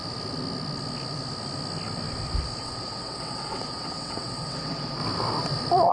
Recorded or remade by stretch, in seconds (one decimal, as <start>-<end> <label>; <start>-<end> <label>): 0.0-2.6 recorded; 2.6-5.0 remade; 5.0-5.9 recorded